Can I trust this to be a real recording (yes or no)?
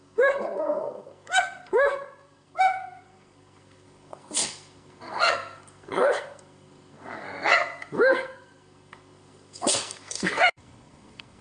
no